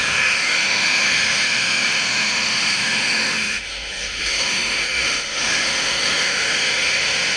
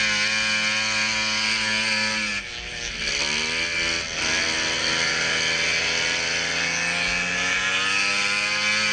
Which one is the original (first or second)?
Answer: second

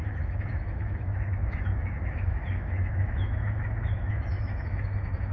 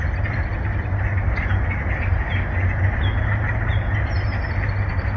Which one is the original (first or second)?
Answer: second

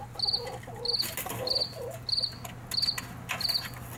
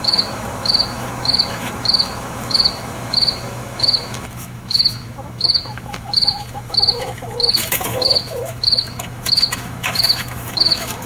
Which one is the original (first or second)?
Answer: first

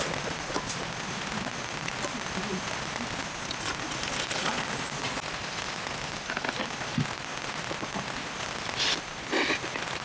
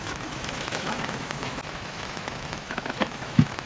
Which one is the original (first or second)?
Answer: first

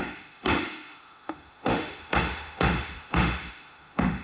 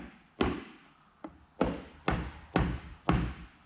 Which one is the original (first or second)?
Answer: second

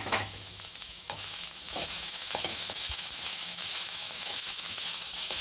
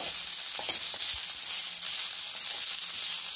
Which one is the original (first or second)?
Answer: second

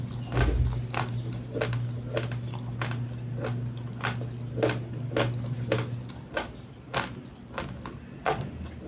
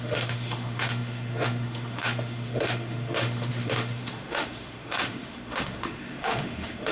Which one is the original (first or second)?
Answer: first